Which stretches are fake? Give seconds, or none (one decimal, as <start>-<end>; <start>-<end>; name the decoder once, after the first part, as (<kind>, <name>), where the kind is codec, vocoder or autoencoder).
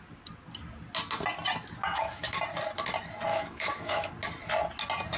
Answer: 1.9-2.4 (autoencoder, DAC-VAE); 3.3-4.1